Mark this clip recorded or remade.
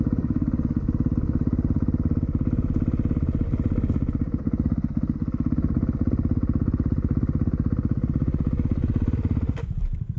recorded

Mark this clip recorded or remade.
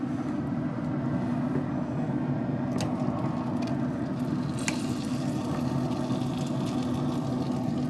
recorded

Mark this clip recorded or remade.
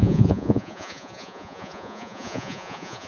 remade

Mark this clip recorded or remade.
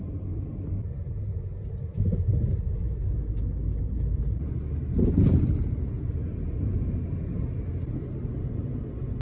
recorded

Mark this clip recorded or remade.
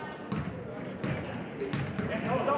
recorded